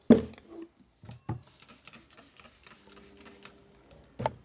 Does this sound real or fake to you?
real